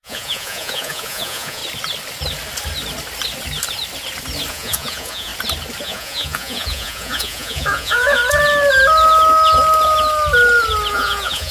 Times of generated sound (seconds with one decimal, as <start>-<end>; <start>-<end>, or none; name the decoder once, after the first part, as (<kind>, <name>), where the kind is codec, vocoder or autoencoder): 0.0-1.6 (vocoder, Vocos); 4.5-5.3; 5.8-8.2; 10.9-11.5